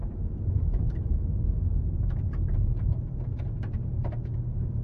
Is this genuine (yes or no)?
no